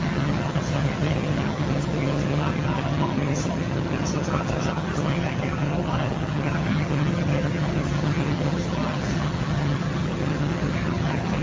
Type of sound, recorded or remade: remade